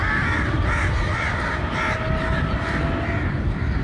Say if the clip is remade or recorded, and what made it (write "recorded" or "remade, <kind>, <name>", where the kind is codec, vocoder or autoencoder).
recorded